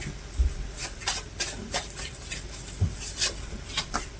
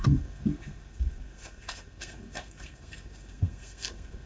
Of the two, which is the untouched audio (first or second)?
first